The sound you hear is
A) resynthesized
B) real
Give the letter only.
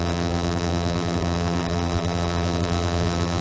A